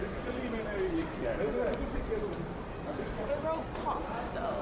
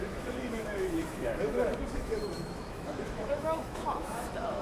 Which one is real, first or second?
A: first